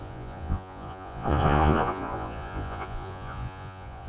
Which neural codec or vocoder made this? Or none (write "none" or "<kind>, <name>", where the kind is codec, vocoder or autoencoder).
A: vocoder, Vocos